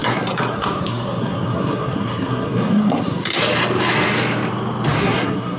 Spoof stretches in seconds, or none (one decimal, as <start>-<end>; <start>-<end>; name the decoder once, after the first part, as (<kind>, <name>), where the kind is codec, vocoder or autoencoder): 0.0-3.4 (codec, SNAC); 5.0-5.6